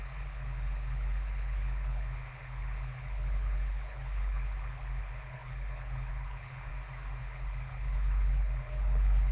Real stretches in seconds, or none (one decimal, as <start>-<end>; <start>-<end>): 6.7-7.2